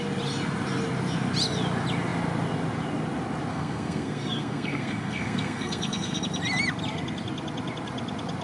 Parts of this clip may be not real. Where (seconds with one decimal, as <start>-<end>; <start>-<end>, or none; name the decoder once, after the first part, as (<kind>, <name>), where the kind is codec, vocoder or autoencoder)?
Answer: 3.5-6.2 (codec, SNAC)